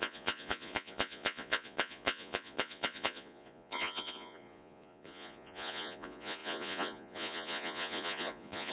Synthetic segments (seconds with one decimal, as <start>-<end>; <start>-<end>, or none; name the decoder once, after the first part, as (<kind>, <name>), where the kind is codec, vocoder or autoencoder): 0.0-8.7 (vocoder, Vocos)